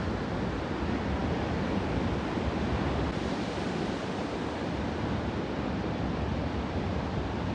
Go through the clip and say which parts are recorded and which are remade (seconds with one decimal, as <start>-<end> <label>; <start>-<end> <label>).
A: 0.0-7.5 recorded